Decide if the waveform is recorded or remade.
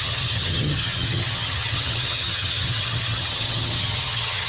remade